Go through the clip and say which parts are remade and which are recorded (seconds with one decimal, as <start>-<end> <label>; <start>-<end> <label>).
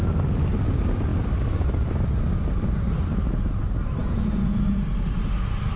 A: 0.0-4.0 recorded; 4.0-4.6 remade; 4.6-5.8 recorded